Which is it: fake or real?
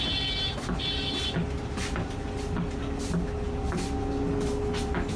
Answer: real